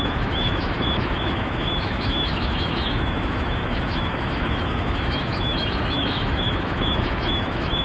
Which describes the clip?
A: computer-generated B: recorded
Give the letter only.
A